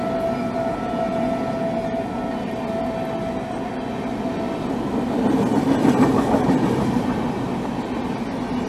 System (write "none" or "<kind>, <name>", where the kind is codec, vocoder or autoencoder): none